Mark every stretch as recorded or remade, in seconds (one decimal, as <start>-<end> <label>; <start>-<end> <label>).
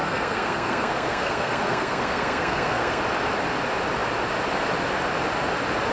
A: 0.0-3.0 remade; 3.0-5.9 recorded